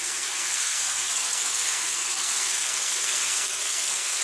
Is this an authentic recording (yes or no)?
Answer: no